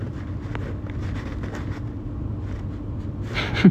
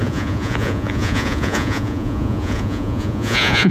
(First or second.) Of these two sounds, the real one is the first